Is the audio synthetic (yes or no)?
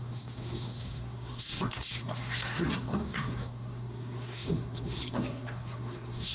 yes